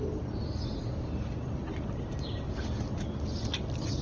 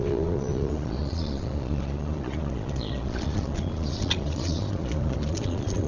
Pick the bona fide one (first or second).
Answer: first